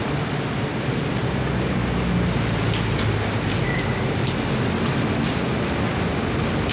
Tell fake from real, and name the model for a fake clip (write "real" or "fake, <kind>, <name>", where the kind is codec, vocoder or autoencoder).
real